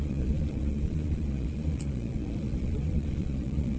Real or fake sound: fake